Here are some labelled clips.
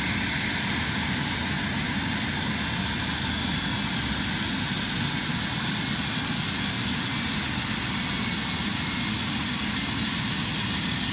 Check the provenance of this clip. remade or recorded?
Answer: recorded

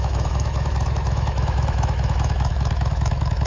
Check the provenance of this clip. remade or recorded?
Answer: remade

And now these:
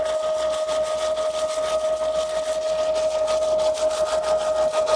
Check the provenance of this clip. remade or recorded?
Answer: recorded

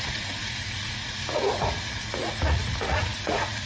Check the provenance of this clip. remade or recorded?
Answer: remade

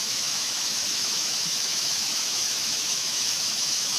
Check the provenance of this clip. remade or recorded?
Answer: remade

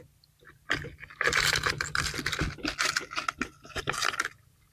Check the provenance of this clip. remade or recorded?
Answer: recorded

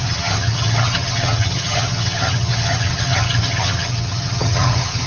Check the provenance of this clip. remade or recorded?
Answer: remade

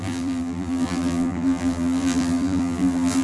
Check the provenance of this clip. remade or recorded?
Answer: remade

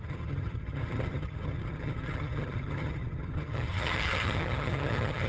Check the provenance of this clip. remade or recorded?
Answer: remade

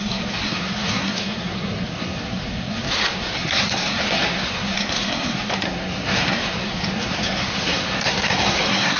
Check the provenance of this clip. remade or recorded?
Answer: remade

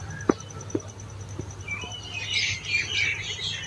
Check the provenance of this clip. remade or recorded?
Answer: recorded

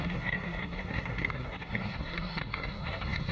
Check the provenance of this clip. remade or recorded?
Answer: remade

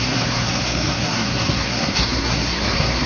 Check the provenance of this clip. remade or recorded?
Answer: remade